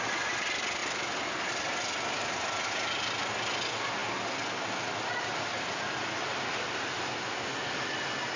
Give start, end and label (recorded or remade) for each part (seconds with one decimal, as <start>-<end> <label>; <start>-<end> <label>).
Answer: 0.0-8.4 recorded